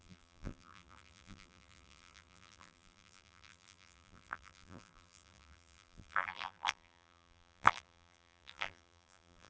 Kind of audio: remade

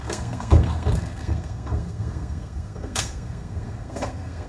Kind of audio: remade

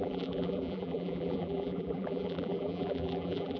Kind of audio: remade